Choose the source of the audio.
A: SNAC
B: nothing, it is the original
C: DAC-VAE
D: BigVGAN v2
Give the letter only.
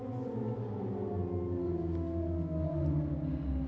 B